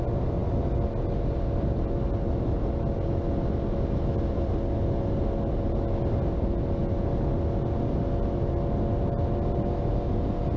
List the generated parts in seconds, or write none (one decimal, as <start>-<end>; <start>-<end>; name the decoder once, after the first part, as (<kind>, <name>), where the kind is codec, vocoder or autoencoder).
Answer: none